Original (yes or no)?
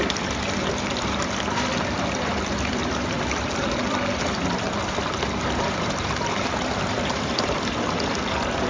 no